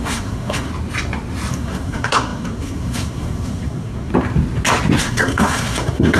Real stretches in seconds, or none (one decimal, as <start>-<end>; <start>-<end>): 0.7-1.5; 4.1-5.0